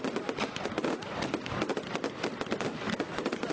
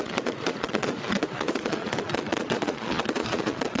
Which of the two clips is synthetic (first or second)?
second